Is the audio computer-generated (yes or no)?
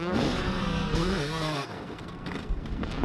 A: yes